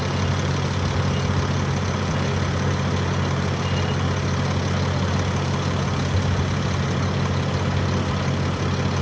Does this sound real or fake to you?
real